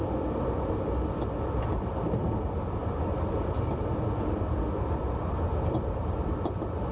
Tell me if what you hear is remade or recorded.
recorded